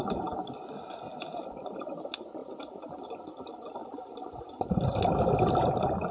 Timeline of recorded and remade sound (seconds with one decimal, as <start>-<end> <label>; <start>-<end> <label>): 0.0-1.1 recorded; 1.1-1.8 remade; 1.8-3.8 recorded; 3.8-5.0 remade; 5.0-6.1 recorded